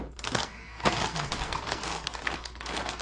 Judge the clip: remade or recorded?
remade